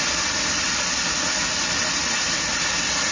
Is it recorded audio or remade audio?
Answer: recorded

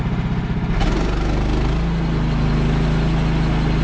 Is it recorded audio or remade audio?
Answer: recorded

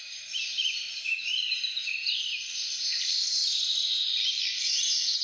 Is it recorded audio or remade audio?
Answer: remade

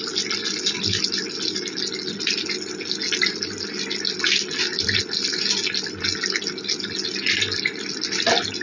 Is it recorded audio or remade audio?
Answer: recorded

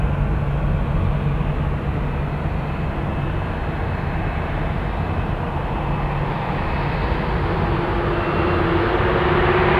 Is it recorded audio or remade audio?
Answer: recorded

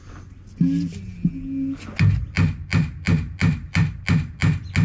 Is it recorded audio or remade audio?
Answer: recorded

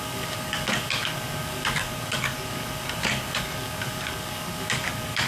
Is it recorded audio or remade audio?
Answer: remade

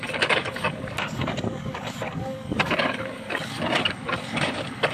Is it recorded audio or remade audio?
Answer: remade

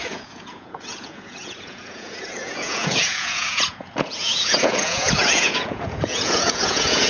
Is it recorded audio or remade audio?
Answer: remade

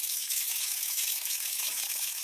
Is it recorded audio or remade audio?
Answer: remade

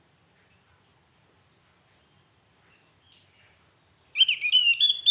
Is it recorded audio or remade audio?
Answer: recorded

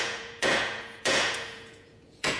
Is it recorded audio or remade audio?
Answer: remade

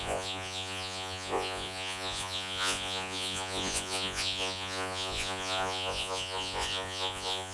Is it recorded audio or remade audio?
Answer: remade